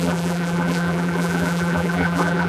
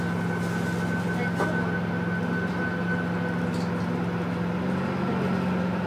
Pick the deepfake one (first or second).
first